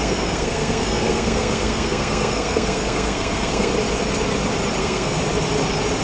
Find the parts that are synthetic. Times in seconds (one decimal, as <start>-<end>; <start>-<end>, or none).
0.0-3.7; 4.8-5.2